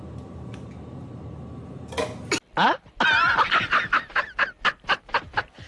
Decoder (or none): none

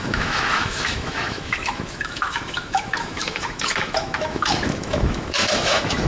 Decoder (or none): autoencoder, DAC-VAE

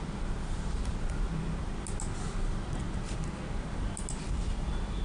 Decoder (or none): none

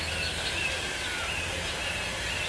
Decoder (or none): none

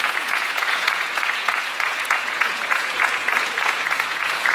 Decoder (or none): vocoder, Vocos